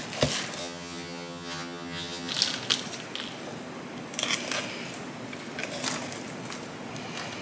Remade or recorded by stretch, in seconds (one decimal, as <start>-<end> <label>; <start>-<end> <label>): 0.0-0.6 recorded; 0.6-2.3 remade; 2.3-7.4 recorded